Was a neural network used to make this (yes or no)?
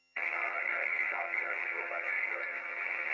yes